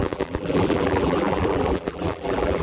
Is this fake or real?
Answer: fake